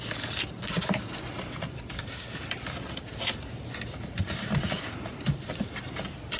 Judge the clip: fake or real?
fake